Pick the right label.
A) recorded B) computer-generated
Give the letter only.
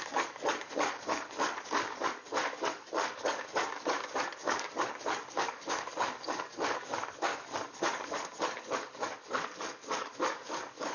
B